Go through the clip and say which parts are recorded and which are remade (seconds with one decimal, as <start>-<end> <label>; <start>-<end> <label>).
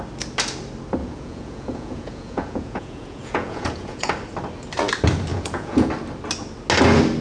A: 0.0-1.0 recorded; 1.0-4.1 remade; 4.1-5.3 recorded; 5.3-5.9 remade; 5.9-7.2 recorded